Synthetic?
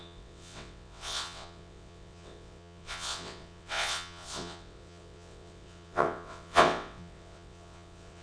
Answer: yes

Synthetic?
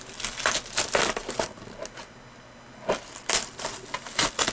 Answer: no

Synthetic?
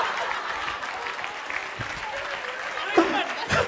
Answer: no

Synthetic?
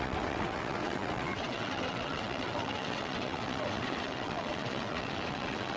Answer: yes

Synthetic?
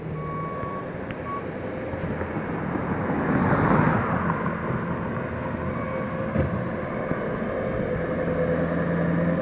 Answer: no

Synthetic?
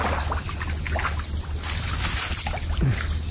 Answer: no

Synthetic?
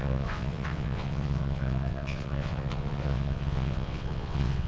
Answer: yes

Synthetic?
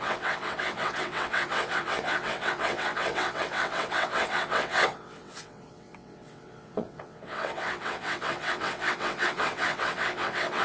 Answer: yes